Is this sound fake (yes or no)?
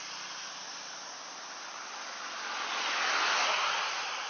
no